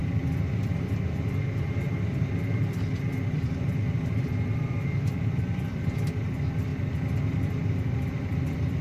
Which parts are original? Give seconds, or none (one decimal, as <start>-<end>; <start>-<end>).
0.0-1.7; 6.7-7.3